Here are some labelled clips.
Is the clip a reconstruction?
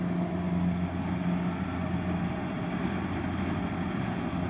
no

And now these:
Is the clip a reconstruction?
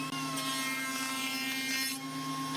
no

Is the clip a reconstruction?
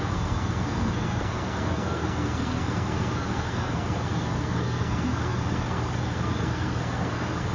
yes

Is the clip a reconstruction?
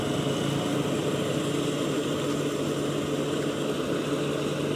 no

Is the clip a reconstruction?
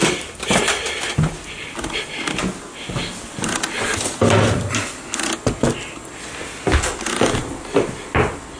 no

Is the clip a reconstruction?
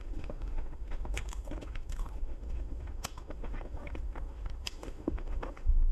yes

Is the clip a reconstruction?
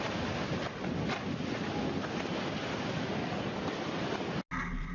no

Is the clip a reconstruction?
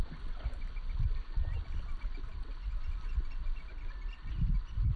no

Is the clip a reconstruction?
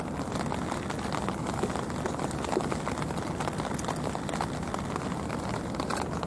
no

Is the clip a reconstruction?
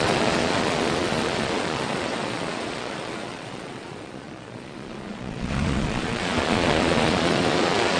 yes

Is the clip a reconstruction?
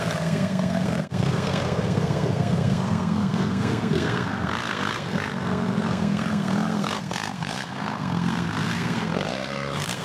yes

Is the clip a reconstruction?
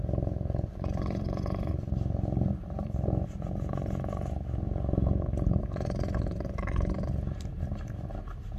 yes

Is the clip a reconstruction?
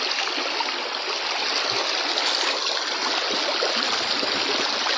no